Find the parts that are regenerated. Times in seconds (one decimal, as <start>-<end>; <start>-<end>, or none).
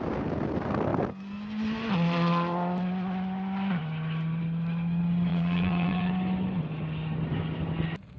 5.3-6.1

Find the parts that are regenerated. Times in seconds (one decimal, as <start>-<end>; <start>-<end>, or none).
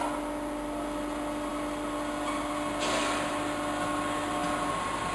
none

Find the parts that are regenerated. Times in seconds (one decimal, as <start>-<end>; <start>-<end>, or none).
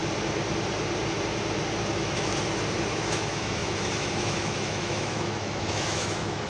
1.9-2.3; 2.9-6.5